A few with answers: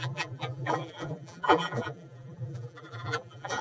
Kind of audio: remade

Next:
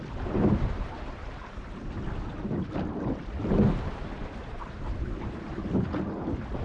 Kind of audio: remade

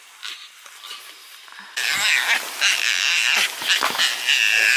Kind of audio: recorded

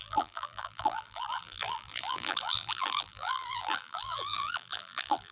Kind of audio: remade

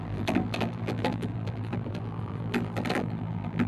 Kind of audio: remade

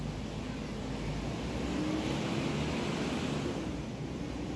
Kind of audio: recorded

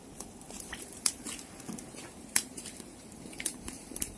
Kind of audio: remade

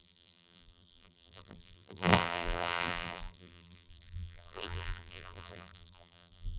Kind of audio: remade